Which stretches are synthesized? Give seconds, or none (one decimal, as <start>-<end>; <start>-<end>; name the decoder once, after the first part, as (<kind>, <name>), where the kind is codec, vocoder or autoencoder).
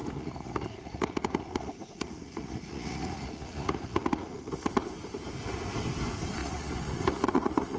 0.0-4.7 (vocoder, Vocos); 6.4-7.8